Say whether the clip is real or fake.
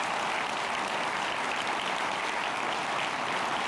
real